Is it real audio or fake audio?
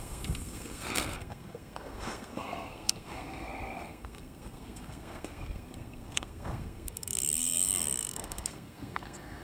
fake